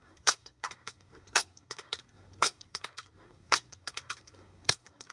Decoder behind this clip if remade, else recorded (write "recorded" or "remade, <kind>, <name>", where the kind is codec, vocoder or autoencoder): remade, codec, SNAC